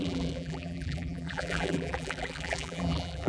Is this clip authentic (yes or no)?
no